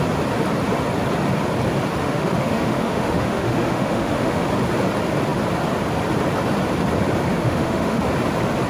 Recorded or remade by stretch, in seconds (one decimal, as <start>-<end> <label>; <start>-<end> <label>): 0.0-2.0 recorded; 2.0-4.5 remade; 4.5-7.4 recorded; 7.4-8.0 remade; 8.0-8.7 recorded